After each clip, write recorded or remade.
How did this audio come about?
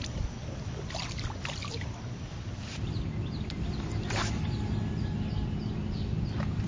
recorded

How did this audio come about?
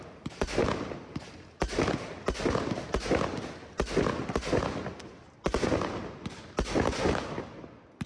recorded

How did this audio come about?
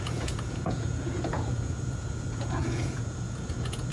remade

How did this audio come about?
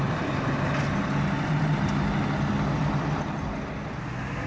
recorded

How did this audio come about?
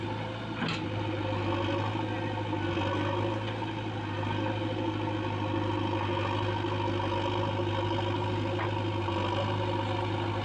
recorded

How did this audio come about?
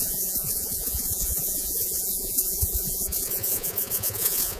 remade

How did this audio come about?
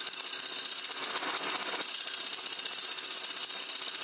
recorded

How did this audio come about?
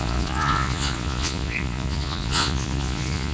remade